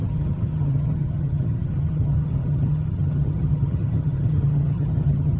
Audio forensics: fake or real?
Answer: fake